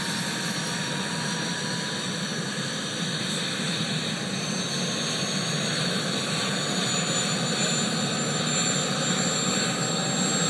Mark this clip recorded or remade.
recorded